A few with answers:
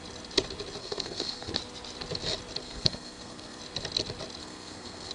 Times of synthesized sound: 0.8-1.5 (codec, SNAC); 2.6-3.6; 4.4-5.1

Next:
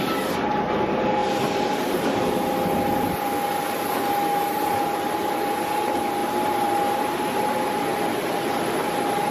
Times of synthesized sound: none

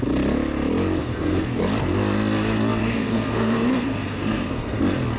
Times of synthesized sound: 1.0-1.6 (codec, SNAC); 2.8-4.8

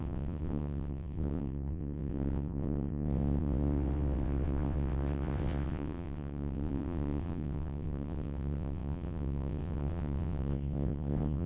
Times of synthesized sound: 0.0-11.5 (vocoder, WaveNeXt)

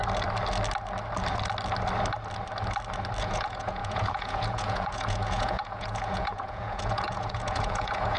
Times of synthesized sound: 3.2-8.2 (vocoder, Vocos)

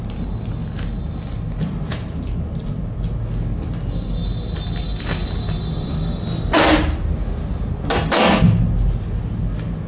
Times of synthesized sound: none

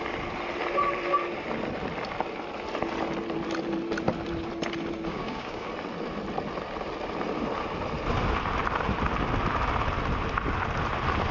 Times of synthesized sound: 5.1-5.7 (codec, DAC)

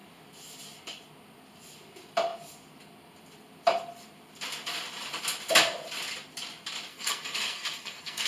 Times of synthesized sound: 6.9-8.3 (codec, SNAC)